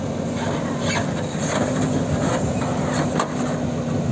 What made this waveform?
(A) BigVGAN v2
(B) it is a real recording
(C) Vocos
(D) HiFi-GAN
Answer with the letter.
B